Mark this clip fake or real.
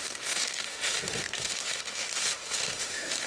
fake